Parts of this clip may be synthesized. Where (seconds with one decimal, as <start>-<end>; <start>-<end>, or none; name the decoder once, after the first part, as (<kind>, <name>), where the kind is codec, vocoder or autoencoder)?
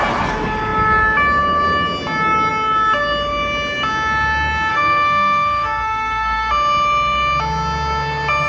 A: 4.7-6.5 (codec, SNAC)